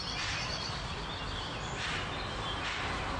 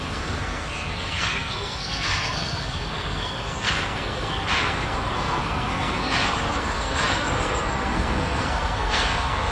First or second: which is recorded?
first